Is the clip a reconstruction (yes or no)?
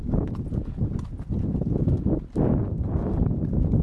no